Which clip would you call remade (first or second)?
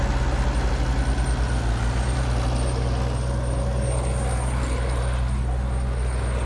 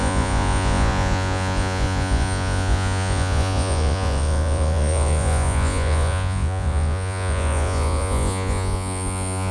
second